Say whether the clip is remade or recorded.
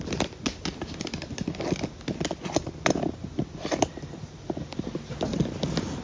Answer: recorded